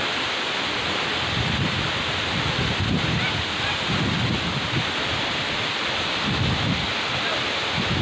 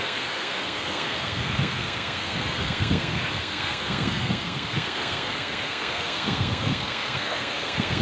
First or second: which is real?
first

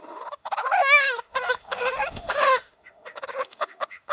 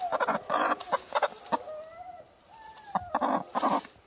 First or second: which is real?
second